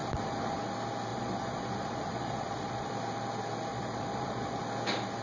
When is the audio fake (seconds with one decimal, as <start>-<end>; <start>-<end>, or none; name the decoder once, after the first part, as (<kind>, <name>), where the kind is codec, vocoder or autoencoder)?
0.0-0.6 (vocoder, Vocos); 1.1-2.9; 3.7-4.6